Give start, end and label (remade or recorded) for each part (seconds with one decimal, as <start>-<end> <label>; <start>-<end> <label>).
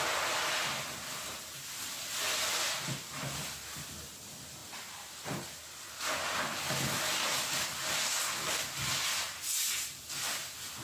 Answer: 0.0-10.8 recorded